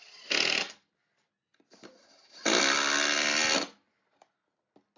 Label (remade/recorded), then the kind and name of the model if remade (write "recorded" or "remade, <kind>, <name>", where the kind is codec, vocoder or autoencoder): recorded